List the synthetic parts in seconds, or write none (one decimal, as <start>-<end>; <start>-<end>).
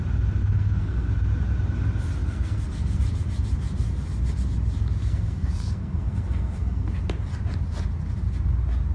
0.4-1.1; 2.2-3.0; 5.0-7.0